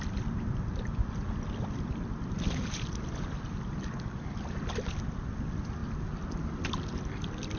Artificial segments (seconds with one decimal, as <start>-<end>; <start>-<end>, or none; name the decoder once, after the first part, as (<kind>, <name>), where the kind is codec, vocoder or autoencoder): none